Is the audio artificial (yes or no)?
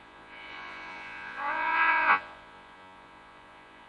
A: yes